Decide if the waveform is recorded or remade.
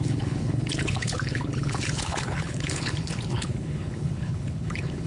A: remade